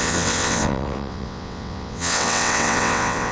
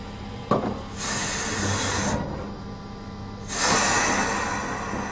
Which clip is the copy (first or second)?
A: first